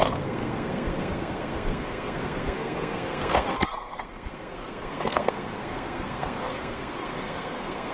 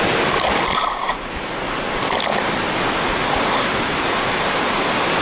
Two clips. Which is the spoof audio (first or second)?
first